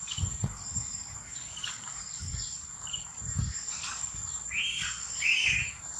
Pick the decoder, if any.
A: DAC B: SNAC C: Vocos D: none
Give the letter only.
A